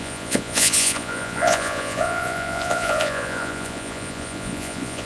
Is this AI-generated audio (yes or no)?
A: yes